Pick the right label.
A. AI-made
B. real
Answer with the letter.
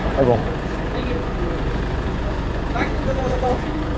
A